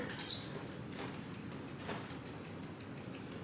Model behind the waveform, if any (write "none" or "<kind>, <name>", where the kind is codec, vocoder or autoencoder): none